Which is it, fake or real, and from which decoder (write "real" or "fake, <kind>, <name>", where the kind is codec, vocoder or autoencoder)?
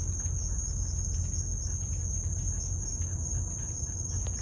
real